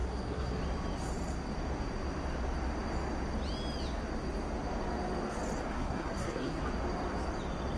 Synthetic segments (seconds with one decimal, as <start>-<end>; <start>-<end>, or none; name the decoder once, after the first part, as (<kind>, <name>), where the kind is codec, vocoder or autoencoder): 0.0-0.6 (codec, SNAC); 5.7-6.6